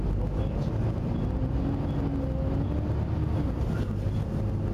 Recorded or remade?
recorded